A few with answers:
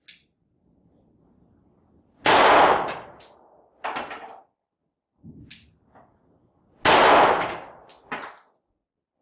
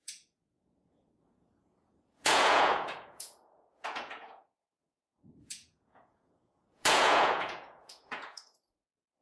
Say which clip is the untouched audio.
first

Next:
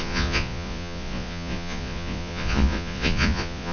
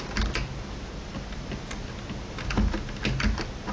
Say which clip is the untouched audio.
second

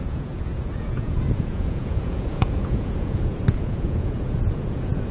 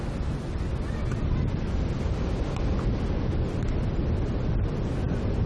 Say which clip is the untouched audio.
second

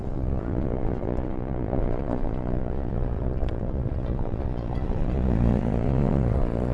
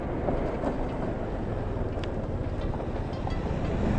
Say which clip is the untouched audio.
second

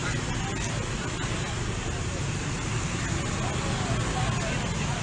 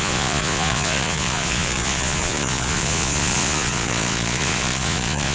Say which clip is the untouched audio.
first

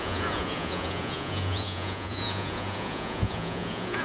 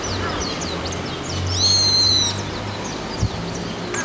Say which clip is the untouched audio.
second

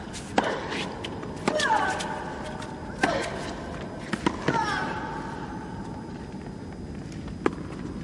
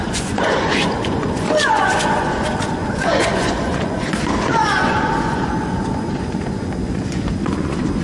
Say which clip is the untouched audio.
first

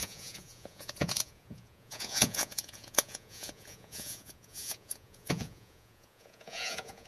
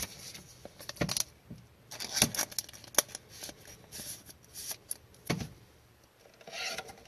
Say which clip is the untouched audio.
second